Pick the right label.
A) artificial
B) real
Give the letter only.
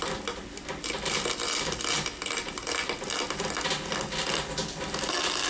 B